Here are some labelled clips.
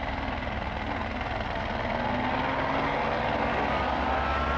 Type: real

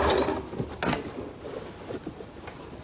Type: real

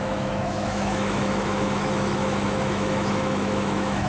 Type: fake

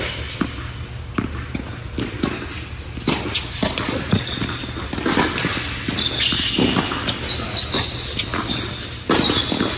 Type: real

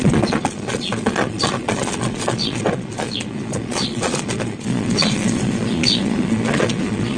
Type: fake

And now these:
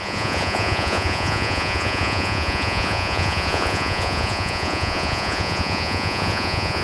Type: fake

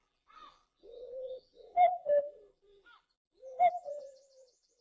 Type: fake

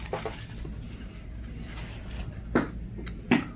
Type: real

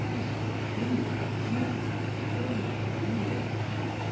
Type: fake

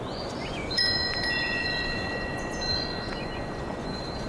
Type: fake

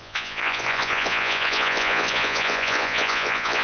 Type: fake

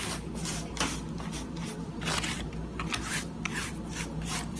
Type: real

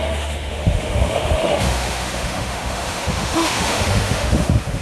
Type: fake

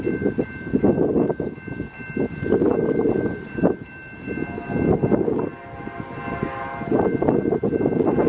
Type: real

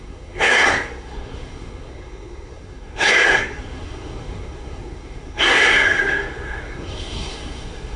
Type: fake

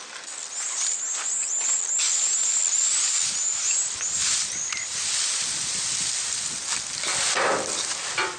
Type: real